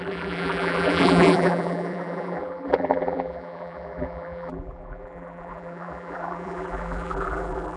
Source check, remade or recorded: remade